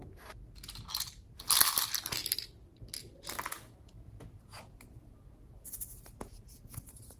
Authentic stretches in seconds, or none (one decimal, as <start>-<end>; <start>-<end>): 0.0-3.5